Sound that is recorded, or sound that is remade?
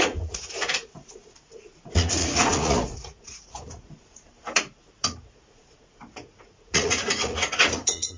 remade